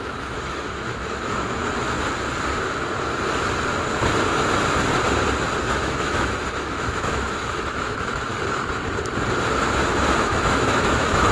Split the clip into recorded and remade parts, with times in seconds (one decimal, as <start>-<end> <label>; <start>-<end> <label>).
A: 0.0-1.6 remade; 1.6-5.6 recorded; 5.6-8.3 remade; 8.3-10.2 recorded; 10.2-11.3 remade